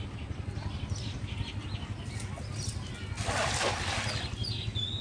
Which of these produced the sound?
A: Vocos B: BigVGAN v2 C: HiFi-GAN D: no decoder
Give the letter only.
D